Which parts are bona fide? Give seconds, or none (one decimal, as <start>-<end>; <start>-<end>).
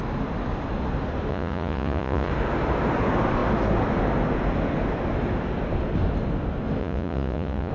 0.0-1.3; 2.3-6.8